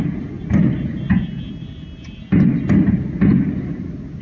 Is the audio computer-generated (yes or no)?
no